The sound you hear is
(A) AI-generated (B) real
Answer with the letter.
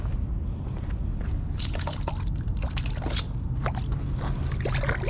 B